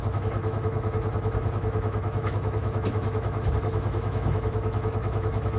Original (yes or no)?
no